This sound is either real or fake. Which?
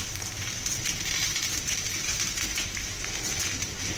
fake